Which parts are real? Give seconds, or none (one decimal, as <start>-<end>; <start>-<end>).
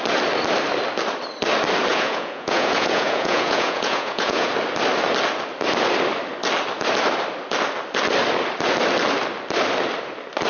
0.0-1.9; 4.5-10.5